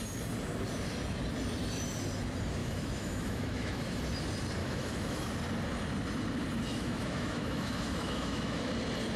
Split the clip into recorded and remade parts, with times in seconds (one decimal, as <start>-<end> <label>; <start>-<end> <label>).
0.0-2.6 recorded; 2.6-4.0 remade; 4.0-4.6 recorded; 4.6-5.3 remade; 5.3-6.7 recorded; 6.7-8.7 remade; 8.7-9.2 recorded